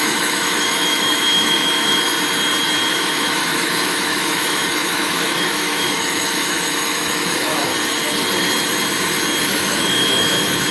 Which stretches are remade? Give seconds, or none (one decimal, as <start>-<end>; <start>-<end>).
0.0-2.1; 2.9-7.7; 9.4-10.7